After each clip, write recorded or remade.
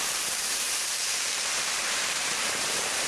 remade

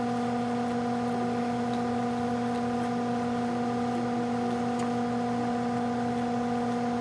recorded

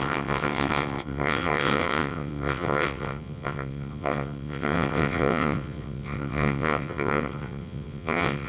remade